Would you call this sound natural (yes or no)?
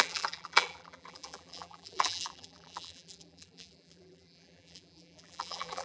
no